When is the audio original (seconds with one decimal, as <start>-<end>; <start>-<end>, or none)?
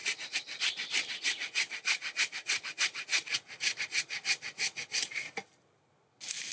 0.0-6.5